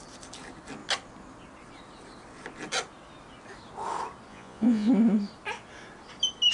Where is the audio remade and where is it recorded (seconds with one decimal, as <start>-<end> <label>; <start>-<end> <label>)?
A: 0.0-4.3 recorded; 4.3-4.9 remade; 4.9-6.5 recorded